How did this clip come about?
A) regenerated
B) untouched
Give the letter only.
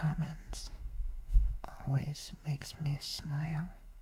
A